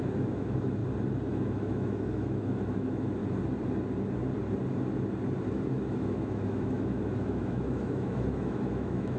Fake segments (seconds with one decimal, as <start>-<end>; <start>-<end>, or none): 0.0-0.8; 1.3-3.2; 5.7-9.2